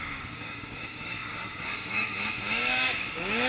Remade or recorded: remade